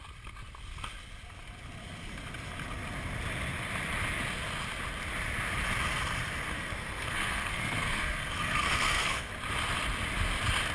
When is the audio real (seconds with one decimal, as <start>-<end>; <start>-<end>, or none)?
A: 0.0-6.5; 9.3-10.7